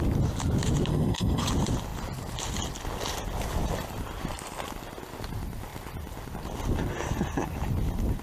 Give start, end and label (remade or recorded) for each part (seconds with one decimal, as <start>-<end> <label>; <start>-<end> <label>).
0.0-0.9 recorded; 0.9-1.4 remade; 1.4-8.2 recorded